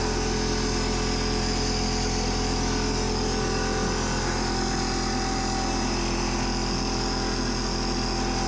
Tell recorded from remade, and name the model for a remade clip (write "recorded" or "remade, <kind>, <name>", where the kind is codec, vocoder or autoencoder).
recorded